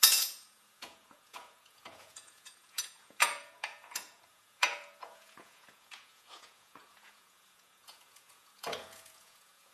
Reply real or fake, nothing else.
fake